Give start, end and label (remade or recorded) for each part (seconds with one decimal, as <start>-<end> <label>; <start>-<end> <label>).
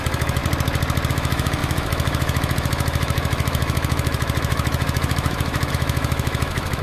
0.0-0.4 remade; 0.4-1.1 recorded; 1.1-6.8 remade